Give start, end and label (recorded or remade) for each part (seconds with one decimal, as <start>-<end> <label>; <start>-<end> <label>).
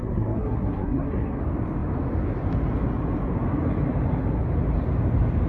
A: 0.0-1.4 remade; 1.4-5.5 recorded